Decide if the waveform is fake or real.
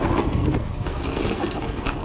fake